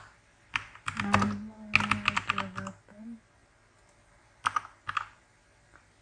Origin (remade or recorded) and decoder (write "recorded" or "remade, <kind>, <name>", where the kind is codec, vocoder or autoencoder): recorded